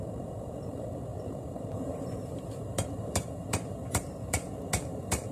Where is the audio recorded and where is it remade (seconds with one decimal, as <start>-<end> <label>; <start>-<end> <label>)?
0.0-5.3 remade